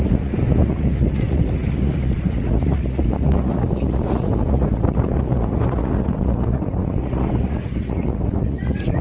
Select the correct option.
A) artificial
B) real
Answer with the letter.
A